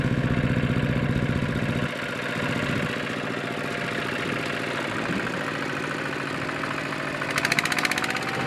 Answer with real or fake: real